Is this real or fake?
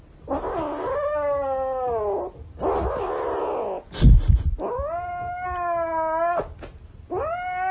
real